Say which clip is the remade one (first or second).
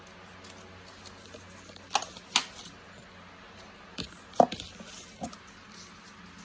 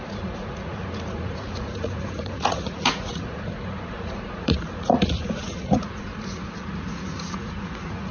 second